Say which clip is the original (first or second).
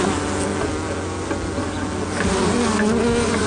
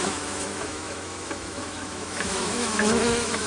first